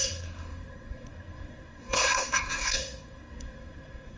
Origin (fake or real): fake